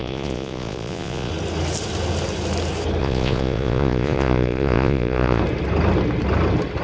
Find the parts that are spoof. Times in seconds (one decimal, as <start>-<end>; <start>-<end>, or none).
0.0-1.3; 3.0-5.4